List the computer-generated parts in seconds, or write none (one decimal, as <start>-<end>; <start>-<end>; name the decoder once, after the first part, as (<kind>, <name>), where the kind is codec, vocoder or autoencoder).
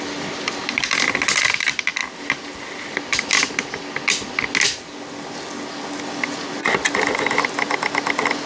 none